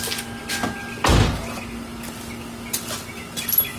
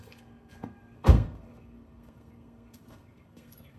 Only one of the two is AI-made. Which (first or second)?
second